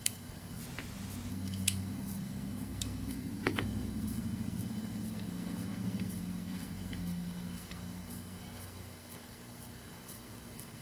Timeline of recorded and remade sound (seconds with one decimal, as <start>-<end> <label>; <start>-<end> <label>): 0.0-0.6 remade; 0.6-1.3 recorded; 1.3-10.8 remade